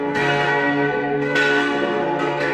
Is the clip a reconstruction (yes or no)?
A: yes